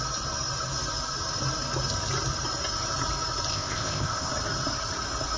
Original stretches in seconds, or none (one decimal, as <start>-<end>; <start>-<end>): 0.0-3.5; 4.3-5.4

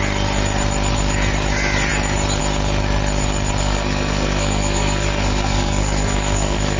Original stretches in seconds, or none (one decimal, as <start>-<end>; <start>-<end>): 0.0-3.6